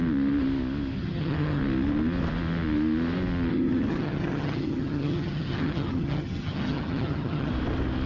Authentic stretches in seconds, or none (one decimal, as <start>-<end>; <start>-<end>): 0.0-1.0; 1.6-3.5; 7.5-8.1